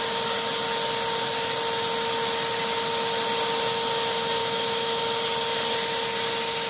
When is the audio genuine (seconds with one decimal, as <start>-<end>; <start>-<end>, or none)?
0.0-4.4; 5.0-6.7